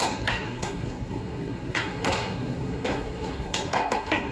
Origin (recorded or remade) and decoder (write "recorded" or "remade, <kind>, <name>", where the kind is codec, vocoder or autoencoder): remade, codec, SNAC